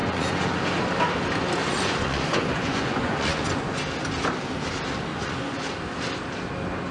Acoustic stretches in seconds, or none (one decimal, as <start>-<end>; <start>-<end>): 0.6-1.6; 3.8-5.1; 5.6-6.9